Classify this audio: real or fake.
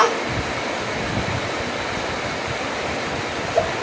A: real